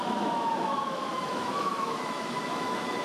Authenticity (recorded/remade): remade